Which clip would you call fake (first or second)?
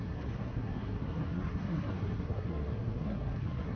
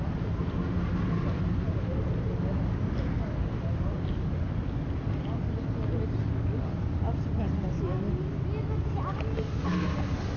first